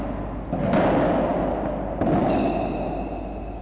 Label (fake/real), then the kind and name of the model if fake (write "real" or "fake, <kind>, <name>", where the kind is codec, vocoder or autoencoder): real